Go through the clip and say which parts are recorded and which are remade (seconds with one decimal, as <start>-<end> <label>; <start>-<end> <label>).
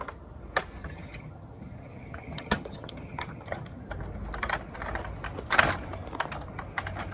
0.0-0.8 recorded; 0.8-3.9 remade; 3.9-7.1 recorded